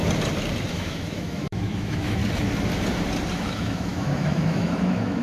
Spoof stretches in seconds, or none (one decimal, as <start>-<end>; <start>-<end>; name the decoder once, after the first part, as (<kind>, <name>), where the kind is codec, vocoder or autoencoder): 0.7-2.2 (autoencoder, DAC-VAE); 3.3-5.2